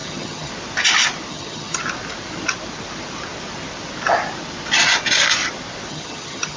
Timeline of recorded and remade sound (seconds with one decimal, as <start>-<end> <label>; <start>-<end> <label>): 0.0-0.5 remade; 0.5-1.3 recorded; 1.3-1.8 remade; 1.8-5.9 recorded; 5.9-6.6 remade